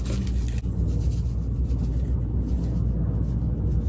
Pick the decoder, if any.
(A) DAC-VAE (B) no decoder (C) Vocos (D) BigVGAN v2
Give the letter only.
B